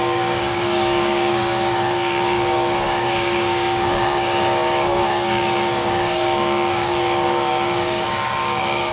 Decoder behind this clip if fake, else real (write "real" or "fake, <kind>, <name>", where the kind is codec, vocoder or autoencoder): fake, codec, DAC